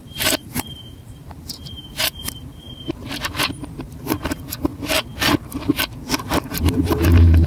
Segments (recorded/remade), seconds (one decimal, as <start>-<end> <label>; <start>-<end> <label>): 0.0-7.5 remade